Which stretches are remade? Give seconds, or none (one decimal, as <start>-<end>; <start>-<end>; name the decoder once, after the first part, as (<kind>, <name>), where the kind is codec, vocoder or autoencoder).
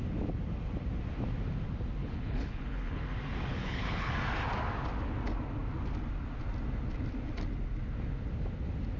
2.0-3.0 (codec, HILCodec); 3.5-4.1